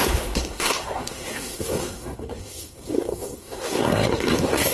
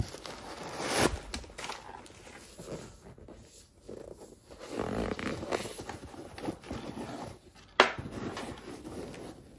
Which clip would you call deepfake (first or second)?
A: first